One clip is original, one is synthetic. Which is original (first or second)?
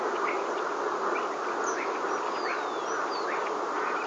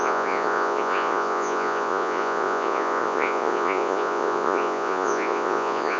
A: first